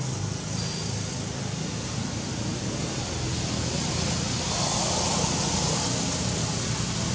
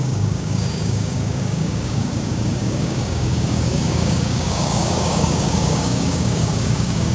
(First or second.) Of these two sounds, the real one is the first